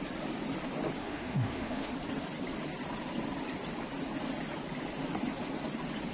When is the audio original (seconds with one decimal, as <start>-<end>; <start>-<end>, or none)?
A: 0.0-1.0; 1.9-6.1